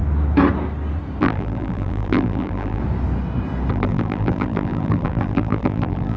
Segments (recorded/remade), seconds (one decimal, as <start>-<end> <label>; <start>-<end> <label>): 0.0-1.2 recorded; 1.2-2.8 remade; 2.8-3.7 recorded; 3.7-6.2 remade